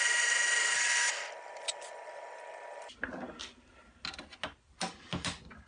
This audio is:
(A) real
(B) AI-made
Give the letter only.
A